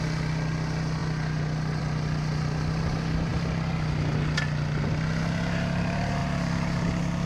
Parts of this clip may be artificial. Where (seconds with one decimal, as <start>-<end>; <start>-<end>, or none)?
0.0-1.0; 1.8-3.3; 4.9-6.2